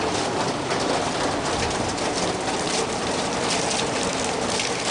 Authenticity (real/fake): real